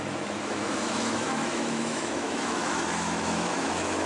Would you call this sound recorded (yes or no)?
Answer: no